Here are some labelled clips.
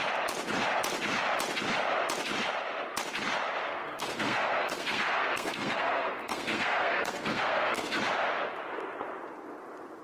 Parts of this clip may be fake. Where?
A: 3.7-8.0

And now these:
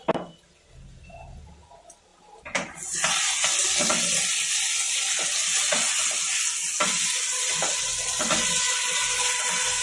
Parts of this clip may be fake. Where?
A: none

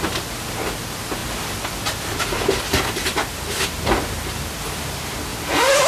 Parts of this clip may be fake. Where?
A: none

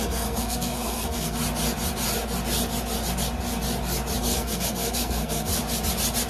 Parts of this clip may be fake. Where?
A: 0.0-1.4; 4.2-5.5